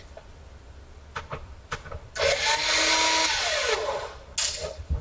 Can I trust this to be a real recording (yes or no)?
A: yes